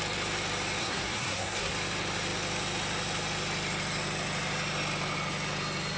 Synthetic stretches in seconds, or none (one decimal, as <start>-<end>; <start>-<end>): 0.8-1.7